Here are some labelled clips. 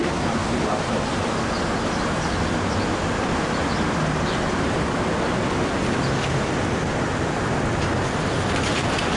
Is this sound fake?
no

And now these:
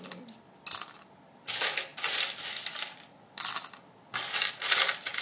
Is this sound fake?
no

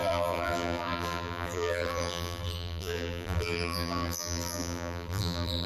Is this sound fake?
yes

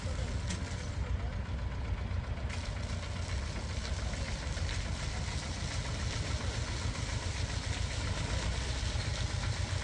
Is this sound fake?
no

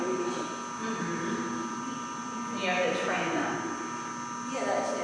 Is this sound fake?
no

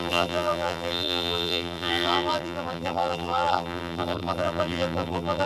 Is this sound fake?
yes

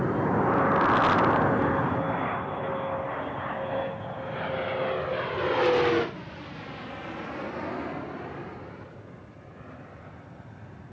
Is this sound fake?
no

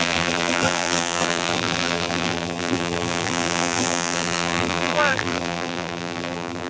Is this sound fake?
yes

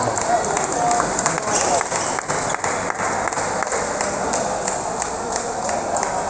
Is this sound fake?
no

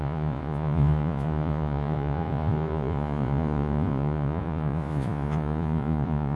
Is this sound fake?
yes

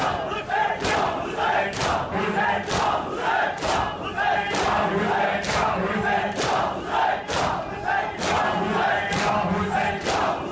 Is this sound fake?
no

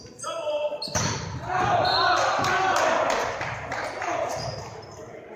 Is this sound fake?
no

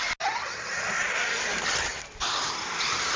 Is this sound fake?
no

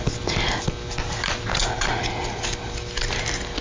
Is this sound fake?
no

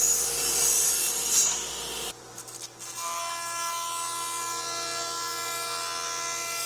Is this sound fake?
no